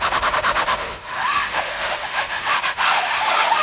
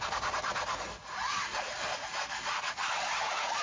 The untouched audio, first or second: second